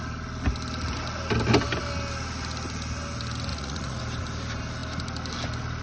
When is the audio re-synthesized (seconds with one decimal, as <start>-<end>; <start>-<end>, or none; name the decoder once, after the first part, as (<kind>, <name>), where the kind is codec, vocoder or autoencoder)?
3.5-4.0 (vocoder, Vocos)